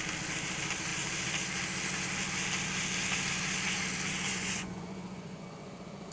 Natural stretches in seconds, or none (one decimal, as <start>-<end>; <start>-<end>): 0.0-4.3